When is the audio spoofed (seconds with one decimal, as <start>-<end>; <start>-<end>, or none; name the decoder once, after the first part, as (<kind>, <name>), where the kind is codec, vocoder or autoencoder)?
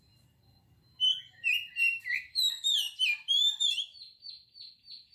0.0-5.1 (vocoder, BigVGAN v2)